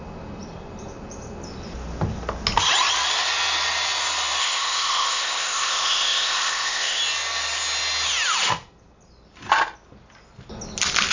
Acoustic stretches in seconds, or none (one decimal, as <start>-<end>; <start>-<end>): 0.0-4.4; 7.0-11.1